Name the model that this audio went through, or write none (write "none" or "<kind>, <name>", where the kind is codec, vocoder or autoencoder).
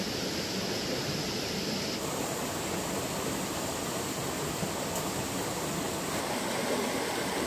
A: none